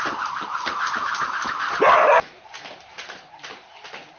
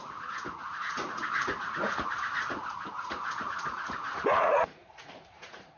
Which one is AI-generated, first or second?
second